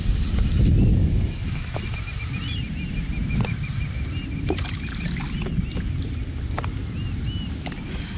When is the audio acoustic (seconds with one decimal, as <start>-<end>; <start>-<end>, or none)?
0.0-0.9; 1.8-8.2